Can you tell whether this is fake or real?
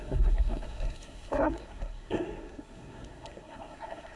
fake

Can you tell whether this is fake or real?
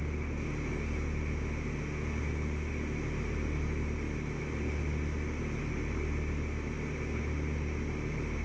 real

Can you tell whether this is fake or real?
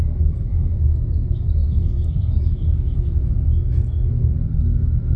fake